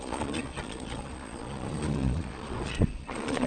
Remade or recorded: remade